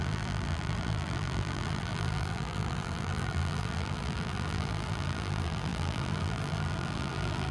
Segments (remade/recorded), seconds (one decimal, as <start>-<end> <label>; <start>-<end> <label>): 0.0-7.5 remade